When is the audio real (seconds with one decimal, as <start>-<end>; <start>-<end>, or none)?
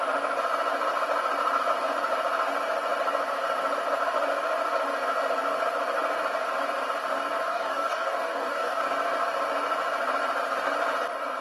0.0-7.5; 8.8-11.4